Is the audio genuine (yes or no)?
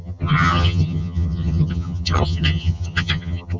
no